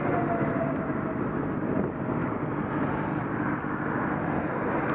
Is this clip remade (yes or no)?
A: no